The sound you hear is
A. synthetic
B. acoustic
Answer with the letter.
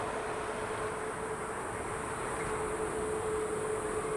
B